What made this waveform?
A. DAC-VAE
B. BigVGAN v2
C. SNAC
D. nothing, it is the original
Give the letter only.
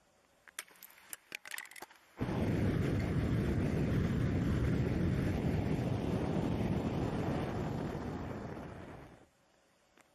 D